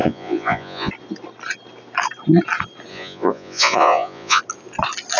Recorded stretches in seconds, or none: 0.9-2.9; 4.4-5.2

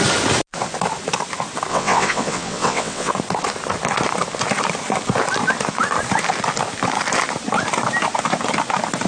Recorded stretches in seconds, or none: 0.0-1.7; 3.1-9.1

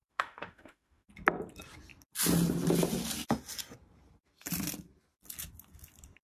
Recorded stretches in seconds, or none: 1.1-6.2

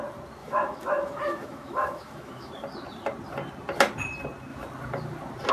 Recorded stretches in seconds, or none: 0.0-0.4; 2.5-5.5

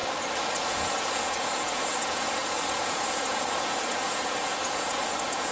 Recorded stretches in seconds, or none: 0.0-0.6

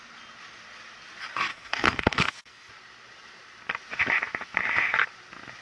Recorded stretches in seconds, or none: 0.0-1.5; 2.7-5.6